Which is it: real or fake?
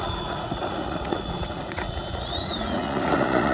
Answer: fake